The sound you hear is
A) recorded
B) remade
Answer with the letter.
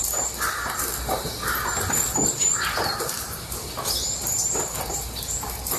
A